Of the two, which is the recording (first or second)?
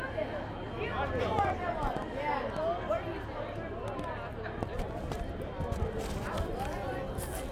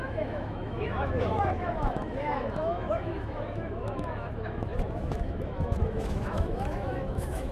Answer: first